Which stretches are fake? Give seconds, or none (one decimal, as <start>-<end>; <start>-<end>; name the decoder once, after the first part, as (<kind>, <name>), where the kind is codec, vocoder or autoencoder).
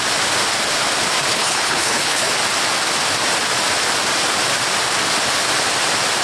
1.3-2.3 (codec, HILCodec)